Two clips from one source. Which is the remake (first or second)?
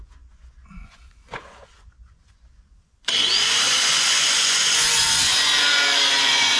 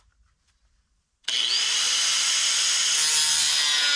first